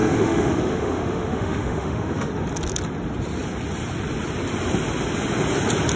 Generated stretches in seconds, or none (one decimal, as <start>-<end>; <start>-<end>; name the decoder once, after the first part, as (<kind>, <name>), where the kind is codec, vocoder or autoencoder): 0.0-2.3 (autoencoder, DAC-VAE)